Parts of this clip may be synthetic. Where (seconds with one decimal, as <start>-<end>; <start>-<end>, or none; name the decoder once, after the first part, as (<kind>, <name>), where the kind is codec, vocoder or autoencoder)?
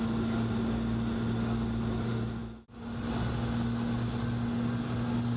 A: none